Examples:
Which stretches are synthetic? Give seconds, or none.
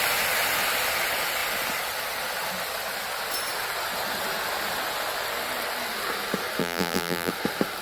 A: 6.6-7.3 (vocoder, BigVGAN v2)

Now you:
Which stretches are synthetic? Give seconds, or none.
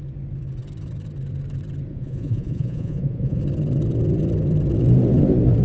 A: 1.9-3.4 (vocoder, Vocos)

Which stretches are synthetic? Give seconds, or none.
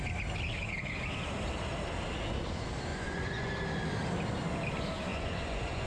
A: 2.9-3.5 (vocoder, Vocos); 5.1-5.9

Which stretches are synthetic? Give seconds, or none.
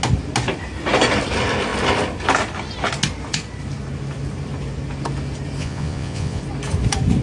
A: 5.6-6.4 (vocoder, Vocos)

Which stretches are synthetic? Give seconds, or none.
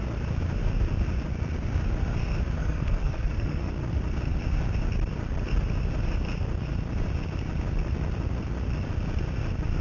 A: 2.6-3.7 (codec, SNAC)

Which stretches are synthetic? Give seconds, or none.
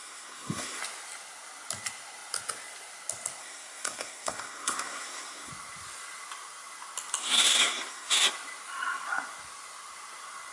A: 0.0-0.8 (codec, SNAC); 3.4-5.5; 7.2-8.3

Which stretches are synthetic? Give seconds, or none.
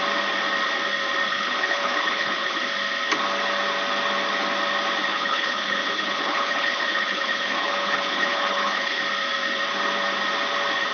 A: 1.3-2.6 (codec, HILCodec); 5.1-9.0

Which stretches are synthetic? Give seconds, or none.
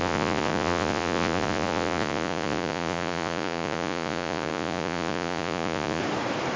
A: 0.0-6.0 (vocoder, Vocos)